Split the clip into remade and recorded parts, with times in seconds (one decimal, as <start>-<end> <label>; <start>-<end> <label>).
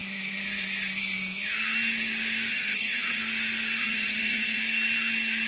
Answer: 0.0-2.5 recorded; 2.5-3.2 remade; 3.2-3.8 recorded; 3.8-4.6 remade; 4.6-5.5 recorded